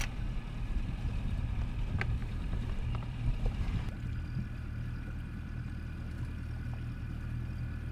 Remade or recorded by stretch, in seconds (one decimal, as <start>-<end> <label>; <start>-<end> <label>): 0.0-2.2 recorded; 2.2-3.6 remade; 3.6-7.9 recorded